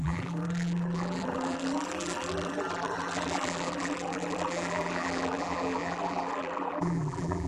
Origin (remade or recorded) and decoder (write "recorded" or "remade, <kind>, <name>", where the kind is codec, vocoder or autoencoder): remade, vocoder, BigVGAN v2